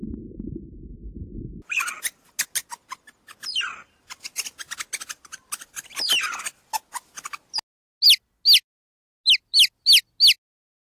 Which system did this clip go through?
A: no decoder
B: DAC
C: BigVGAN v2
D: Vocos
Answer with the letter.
A